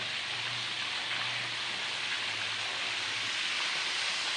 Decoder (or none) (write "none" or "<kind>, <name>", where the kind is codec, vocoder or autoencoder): none